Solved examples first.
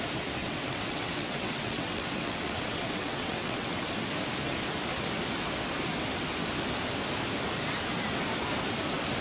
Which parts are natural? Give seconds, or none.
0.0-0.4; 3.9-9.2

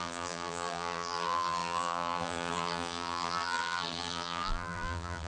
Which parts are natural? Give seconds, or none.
none

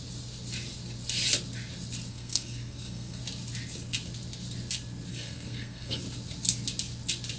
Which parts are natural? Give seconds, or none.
0.0-2.1; 3.2-5.1; 6.0-7.4

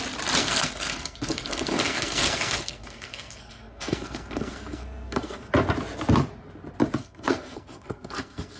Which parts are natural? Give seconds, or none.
0.0-0.4; 5.5-7.0

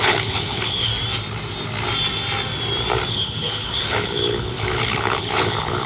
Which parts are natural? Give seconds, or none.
0.9-3.1

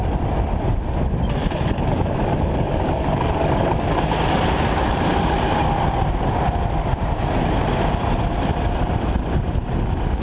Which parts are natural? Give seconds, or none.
0.0-1.4; 4.0-10.2